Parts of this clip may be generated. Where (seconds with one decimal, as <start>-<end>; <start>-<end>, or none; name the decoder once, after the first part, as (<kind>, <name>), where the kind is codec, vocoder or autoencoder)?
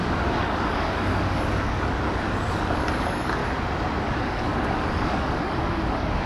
0.0-3.4 (codec, DAC); 4.0-6.3